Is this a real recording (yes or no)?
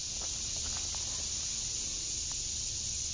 yes